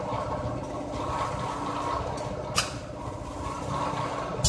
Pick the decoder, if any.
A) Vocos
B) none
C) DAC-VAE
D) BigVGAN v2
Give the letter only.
B